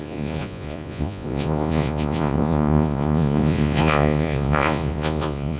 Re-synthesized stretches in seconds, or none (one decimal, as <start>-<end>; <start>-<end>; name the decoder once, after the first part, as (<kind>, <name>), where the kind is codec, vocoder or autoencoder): 0.0-5.6 (vocoder, Vocos)

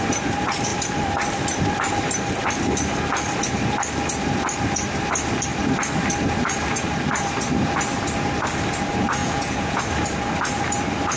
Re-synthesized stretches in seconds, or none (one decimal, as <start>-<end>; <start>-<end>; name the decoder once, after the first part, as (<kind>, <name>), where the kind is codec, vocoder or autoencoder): 9.2-9.8 (vocoder, Vocos)

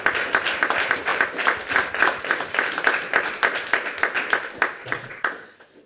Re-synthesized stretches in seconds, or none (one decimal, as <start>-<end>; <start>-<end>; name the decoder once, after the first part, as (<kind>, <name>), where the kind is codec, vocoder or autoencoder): 4.8-5.9 (vocoder, Vocos)

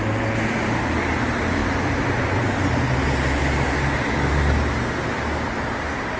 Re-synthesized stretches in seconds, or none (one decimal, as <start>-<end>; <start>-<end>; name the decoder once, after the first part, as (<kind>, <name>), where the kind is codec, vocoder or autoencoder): none

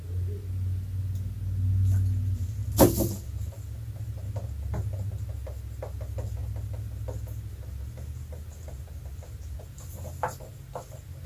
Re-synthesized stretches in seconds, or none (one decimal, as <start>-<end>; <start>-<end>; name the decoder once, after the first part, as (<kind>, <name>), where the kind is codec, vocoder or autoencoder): none

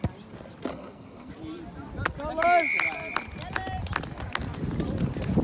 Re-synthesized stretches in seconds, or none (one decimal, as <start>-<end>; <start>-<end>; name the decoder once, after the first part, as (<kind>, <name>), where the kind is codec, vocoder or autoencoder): 0.7-1.3 (codec, SNAC)